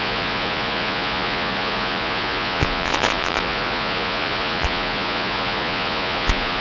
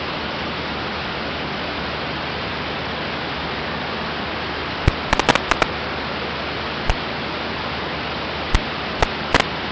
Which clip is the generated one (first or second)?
first